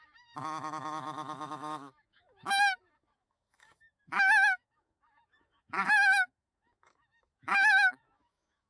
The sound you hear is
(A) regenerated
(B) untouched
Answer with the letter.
A